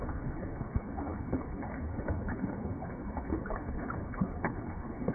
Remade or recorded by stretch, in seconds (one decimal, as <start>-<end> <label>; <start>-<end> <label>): 0.0-5.1 remade